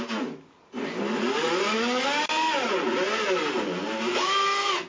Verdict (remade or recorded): recorded